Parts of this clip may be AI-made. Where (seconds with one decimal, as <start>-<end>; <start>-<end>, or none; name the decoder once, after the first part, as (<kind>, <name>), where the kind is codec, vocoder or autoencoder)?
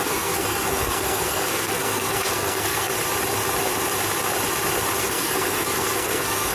0.0-2.9 (codec, SNAC); 5.0-6.5